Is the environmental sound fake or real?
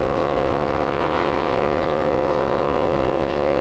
fake